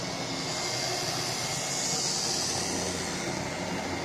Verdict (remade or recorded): recorded